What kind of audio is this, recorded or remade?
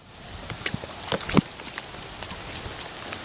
recorded